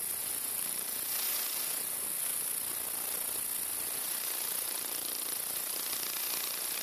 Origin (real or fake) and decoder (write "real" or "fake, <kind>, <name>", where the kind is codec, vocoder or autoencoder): real